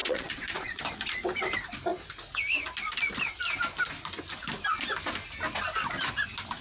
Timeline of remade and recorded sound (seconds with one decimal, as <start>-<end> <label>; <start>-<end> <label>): 0.0-0.8 remade; 0.8-6.6 recorded